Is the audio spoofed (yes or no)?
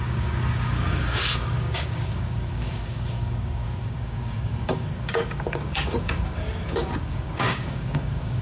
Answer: yes